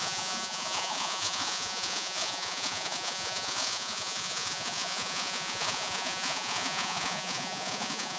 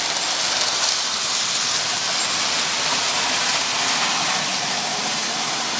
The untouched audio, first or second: second